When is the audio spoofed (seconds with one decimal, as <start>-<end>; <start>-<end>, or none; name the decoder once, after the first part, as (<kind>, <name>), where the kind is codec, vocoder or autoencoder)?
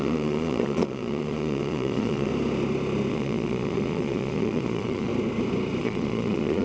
0.0-2.3 (vocoder, Vocos); 3.1-5.1; 5.8-6.6